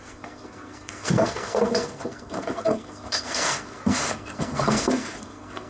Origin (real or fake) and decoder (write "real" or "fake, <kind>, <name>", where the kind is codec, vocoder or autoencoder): fake, codec, SNAC